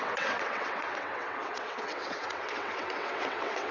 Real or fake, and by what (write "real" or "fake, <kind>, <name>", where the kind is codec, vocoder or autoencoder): fake, vocoder, WaveNeXt